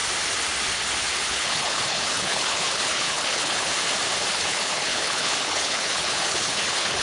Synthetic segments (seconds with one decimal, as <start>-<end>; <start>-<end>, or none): 1.3-3.7; 4.3-7.0